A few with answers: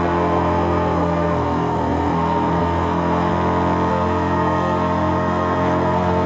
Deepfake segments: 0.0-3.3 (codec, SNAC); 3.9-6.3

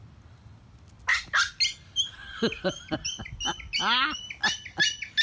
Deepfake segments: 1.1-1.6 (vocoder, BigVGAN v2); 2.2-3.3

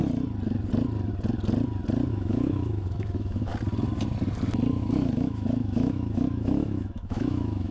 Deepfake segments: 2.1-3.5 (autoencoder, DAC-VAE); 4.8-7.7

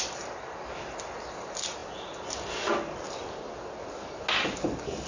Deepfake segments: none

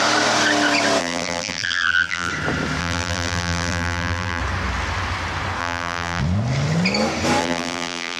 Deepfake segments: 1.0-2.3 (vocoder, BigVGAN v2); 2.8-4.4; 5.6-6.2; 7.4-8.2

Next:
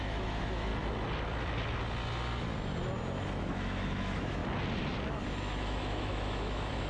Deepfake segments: 0.0-0.7 (autoencoder, DAC-VAE); 3.4-4.4; 5.3-6.9